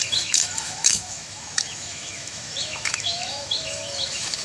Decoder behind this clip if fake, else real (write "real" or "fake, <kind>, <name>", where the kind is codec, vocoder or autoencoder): fake, autoencoder, DAC-VAE